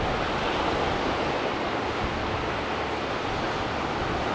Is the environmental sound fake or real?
real